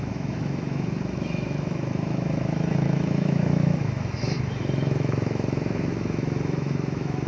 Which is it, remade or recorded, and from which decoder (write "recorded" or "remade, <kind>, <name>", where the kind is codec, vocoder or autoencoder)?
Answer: remade, autoencoder, DAC-VAE